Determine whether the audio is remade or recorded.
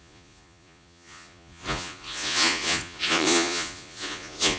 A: remade